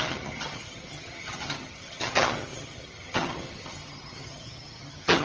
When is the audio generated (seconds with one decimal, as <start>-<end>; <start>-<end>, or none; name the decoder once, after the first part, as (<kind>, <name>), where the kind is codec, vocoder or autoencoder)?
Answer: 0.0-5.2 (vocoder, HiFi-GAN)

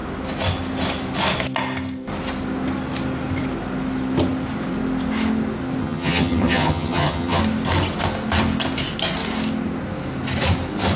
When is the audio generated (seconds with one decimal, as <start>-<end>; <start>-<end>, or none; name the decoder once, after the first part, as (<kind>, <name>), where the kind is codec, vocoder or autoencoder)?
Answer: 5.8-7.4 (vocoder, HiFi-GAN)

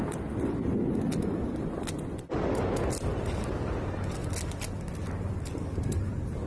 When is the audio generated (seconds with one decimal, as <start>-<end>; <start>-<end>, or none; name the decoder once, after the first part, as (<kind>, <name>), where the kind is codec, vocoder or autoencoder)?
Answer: none

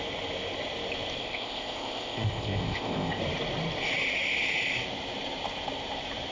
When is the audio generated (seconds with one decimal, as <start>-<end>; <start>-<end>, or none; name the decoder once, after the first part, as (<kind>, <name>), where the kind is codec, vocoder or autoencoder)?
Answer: 1.2-3.2 (codec, ZipCodec)

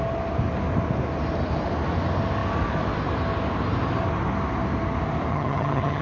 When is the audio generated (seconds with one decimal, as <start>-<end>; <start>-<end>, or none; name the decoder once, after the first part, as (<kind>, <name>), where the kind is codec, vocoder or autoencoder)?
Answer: 5.3-6.0 (vocoder, HiFi-GAN)

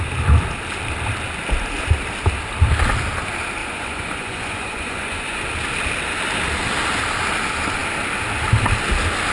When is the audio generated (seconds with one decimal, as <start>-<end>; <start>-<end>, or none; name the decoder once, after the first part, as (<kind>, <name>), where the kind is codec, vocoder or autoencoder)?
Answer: 3.6-5.4 (vocoder, Vocos)